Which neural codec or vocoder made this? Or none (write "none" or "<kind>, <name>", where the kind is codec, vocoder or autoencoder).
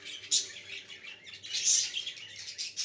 none